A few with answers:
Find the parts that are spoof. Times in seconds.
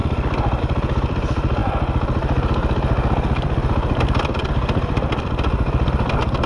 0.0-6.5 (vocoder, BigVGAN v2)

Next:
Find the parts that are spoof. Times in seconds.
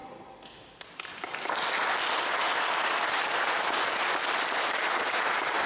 none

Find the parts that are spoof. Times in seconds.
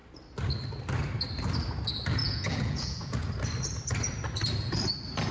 2.2-3.3 (vocoder, Vocos)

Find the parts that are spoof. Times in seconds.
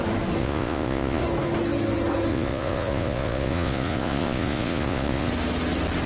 0.4-1.2 (vocoder, Vocos); 2.3-5.3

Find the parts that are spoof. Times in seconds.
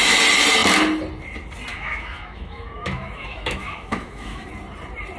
1.7-4.5 (autoencoder, DAC-VAE)